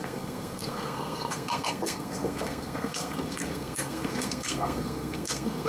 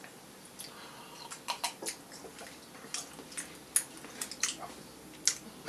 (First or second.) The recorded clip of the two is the second